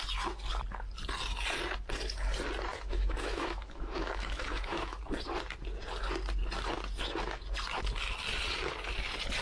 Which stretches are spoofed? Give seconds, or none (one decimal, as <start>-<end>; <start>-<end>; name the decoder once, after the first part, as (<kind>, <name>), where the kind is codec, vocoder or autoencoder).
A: 2.7-5.0 (autoencoder, DAC-VAE)